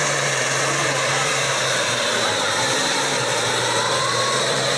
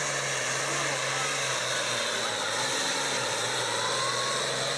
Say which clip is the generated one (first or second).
first